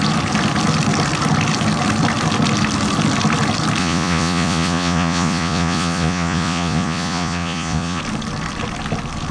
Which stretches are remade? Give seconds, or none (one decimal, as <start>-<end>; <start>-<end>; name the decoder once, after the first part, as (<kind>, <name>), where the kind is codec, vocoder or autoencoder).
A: 3.8-8.0 (vocoder, Vocos)